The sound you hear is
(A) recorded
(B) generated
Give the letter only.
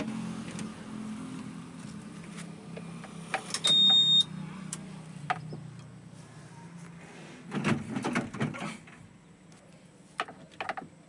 A